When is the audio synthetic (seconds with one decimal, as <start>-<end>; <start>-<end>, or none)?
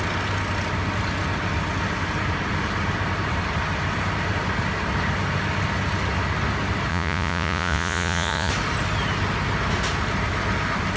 6.9-8.5